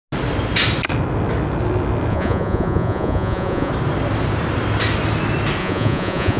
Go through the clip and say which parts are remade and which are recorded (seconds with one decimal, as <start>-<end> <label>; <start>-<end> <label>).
0.0-2.1 recorded; 2.1-3.7 remade; 3.7-5.6 recorded; 5.6-6.4 remade